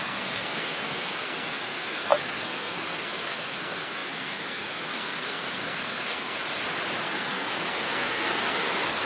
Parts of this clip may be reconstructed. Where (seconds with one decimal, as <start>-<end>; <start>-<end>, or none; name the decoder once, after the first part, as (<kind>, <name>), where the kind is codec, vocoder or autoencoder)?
0.0-6.4 (codec, SNAC); 7.0-9.1